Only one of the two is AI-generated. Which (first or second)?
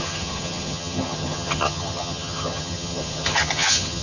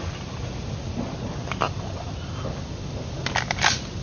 first